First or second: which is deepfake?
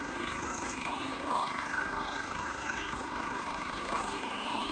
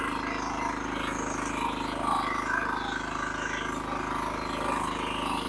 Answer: first